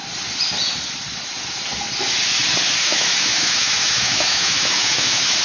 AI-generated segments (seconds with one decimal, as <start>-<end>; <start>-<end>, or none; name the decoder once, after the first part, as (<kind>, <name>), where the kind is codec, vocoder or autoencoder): 2.8-5.4 (autoencoder, DAC-VAE)